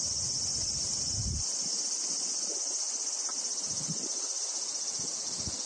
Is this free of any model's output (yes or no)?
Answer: yes